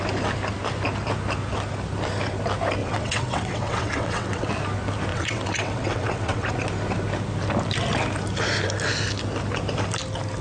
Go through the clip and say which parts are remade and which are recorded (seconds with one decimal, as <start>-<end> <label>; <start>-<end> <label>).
0.0-2.8 recorded; 2.8-4.5 remade; 4.5-5.1 recorded; 5.1-6.5 remade; 6.5-10.4 recorded

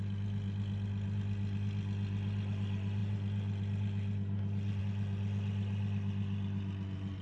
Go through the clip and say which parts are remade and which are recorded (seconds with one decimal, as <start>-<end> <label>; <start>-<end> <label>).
0.0-7.2 recorded

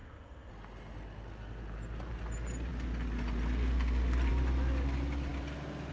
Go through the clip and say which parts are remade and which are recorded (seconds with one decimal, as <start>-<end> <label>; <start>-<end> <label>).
0.0-0.5 remade; 0.5-5.9 recorded

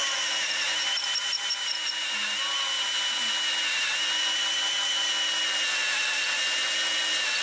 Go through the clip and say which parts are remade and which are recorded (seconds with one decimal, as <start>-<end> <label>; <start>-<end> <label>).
0.0-7.4 recorded

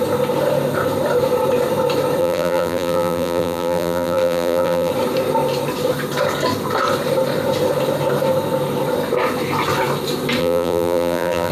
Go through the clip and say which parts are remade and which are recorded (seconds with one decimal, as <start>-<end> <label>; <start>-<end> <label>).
0.0-2.2 recorded; 2.2-4.9 remade; 4.9-10.4 recorded; 10.4-11.5 remade

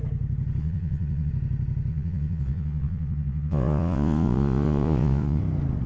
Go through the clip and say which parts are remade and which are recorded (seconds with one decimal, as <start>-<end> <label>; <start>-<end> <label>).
0.0-0.6 recorded; 0.6-1.3 remade; 1.3-1.9 recorded; 1.9-5.4 remade; 5.4-5.9 recorded

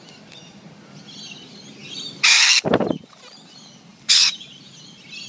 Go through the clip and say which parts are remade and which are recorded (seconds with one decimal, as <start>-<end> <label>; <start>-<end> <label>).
0.0-1.8 recorded; 1.8-3.3 remade; 3.3-3.9 recorded; 3.9-4.7 remade; 4.7-5.3 recorded

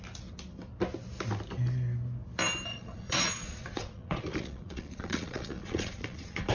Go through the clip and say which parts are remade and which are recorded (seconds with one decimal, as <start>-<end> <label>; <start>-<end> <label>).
0.0-2.7 recorded; 2.7-6.5 remade